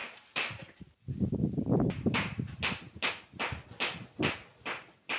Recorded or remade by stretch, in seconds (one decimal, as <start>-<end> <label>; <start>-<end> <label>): 0.0-3.1 remade; 3.1-5.2 recorded